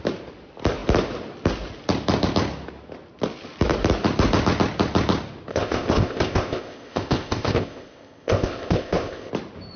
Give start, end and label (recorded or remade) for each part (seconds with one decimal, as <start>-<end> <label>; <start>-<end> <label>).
0.0-5.5 recorded; 5.5-9.3 remade; 9.3-9.8 recorded